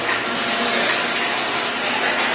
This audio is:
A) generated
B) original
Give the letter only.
B